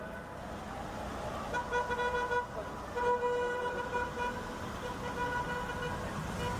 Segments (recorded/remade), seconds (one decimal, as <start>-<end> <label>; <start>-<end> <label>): 0.0-6.6 recorded